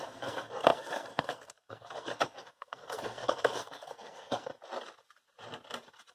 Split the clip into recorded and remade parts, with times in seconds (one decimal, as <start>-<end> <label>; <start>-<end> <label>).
0.0-4.5 remade; 4.5-6.1 recorded